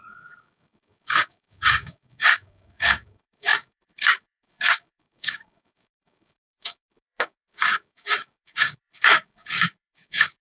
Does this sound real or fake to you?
fake